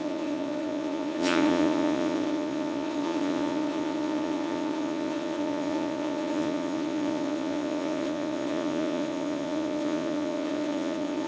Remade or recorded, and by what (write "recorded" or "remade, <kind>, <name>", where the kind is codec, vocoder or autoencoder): remade, vocoder, Vocos